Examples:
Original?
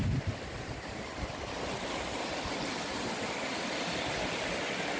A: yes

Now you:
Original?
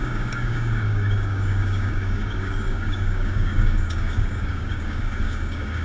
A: no